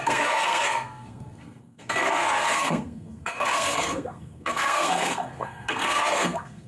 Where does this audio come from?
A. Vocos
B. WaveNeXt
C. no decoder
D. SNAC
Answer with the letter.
D